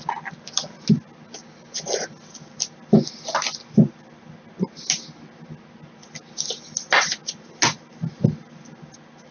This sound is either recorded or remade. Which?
recorded